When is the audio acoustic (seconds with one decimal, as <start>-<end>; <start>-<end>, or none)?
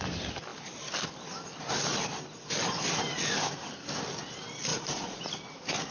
0.0-4.7; 5.2-5.9